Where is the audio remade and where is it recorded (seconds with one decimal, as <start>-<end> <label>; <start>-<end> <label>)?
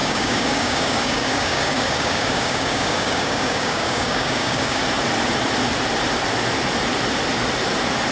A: 0.0-4.8 remade; 4.8-8.1 recorded